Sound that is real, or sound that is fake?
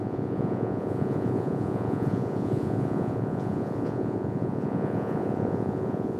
fake